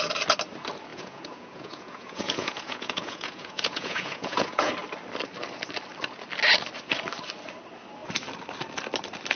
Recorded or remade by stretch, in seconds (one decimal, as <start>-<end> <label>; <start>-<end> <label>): 0.0-0.9 recorded; 0.9-4.7 remade; 4.7-9.4 recorded